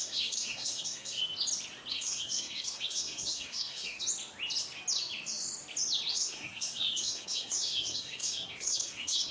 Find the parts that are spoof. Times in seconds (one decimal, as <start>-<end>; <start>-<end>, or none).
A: 0.0-1.2; 1.9-4.0; 6.1-9.3